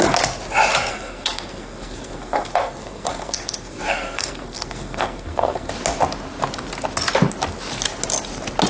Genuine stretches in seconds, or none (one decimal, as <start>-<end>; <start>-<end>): 0.0-0.9; 5.7-8.7